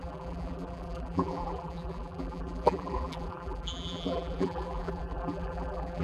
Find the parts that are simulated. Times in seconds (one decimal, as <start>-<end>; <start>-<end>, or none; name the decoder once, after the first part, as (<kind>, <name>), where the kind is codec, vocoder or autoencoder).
0.0-6.0 (vocoder, BigVGAN v2)